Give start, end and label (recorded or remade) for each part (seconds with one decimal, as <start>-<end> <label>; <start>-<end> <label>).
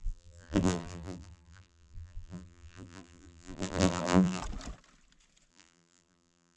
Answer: 0.0-4.4 remade; 4.4-5.5 recorded; 5.5-6.6 remade